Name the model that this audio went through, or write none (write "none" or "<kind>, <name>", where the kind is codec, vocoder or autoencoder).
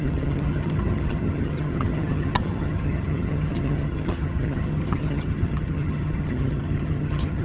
vocoder, HiFi-GAN